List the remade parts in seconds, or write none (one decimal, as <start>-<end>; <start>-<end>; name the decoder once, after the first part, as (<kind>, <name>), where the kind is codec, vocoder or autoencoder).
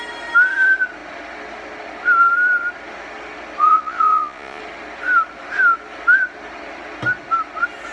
3.6-4.6 (vocoder, Vocos)